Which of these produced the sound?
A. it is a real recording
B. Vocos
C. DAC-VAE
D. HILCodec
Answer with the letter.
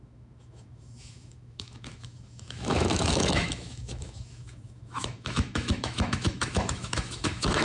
C